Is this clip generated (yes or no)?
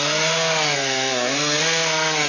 yes